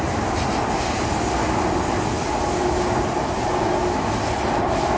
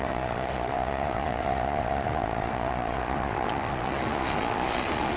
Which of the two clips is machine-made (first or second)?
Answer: second